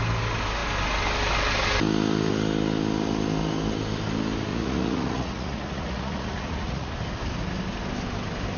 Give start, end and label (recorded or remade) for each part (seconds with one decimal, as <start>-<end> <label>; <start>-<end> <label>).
0.0-4.5 recorded; 4.5-6.9 remade; 6.9-8.6 recorded